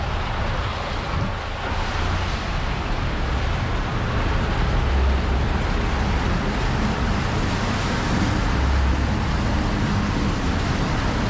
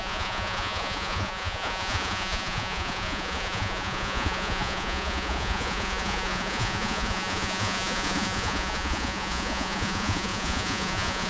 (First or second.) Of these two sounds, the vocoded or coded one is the second